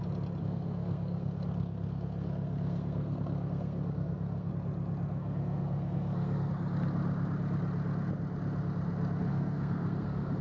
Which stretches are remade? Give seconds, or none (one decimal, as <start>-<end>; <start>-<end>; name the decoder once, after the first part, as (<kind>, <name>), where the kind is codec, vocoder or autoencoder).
0.4-4.5 (codec, SNAC); 5.2-6.5; 9.3-10.4